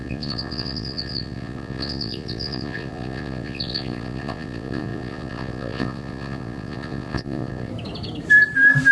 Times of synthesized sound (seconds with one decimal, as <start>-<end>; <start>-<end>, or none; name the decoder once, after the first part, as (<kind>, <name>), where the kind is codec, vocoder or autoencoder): 0.0-7.7 (vocoder, Vocos)